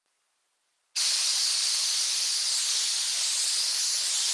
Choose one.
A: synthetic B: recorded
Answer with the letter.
B